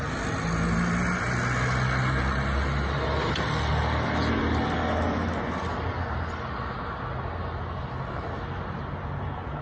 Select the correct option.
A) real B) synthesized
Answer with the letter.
A